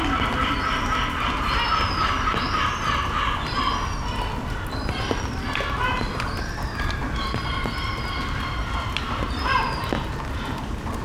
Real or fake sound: real